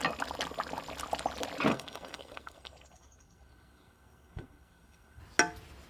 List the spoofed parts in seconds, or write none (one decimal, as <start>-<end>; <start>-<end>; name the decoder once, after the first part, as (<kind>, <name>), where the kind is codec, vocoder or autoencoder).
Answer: 1.7-5.2 (codec, SNAC)